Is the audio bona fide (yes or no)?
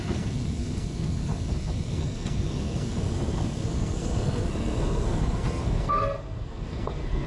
no